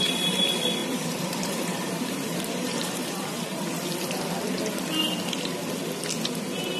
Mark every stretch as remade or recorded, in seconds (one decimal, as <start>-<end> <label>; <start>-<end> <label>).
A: 0.0-0.8 recorded; 0.8-3.7 remade; 3.7-6.8 recorded